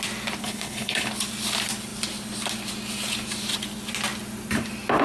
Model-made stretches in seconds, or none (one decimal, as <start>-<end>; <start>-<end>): 0.4-1.1